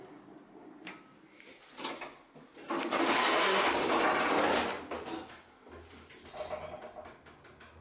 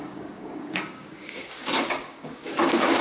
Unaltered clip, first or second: first